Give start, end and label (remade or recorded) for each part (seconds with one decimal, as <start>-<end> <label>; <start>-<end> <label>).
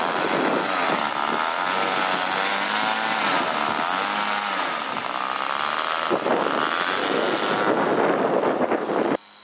0.0-9.4 recorded